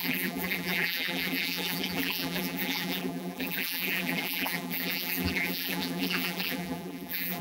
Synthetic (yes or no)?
yes